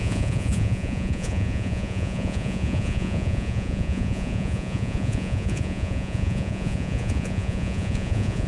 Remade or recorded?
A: remade